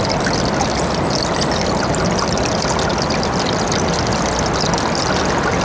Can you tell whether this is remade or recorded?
recorded